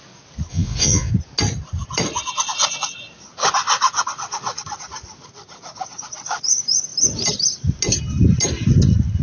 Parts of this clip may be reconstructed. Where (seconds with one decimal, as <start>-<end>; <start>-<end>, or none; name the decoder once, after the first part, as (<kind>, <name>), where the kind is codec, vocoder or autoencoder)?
0.5-1.1 (vocoder, Vocos)